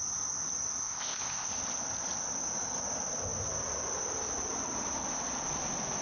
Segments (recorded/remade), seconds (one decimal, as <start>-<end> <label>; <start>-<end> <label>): 0.0-0.8 recorded; 0.8-1.5 remade; 1.5-6.0 recorded